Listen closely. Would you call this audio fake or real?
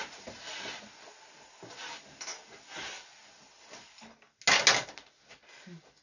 real